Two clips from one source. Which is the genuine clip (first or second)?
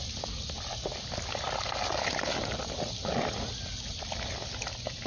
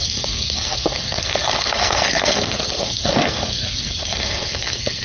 first